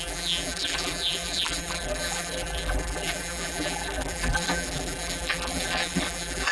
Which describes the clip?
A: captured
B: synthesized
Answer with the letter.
B